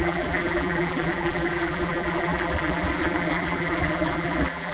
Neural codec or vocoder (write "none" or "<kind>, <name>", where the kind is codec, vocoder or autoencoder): vocoder, BigVGAN v2